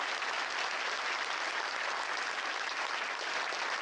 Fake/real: real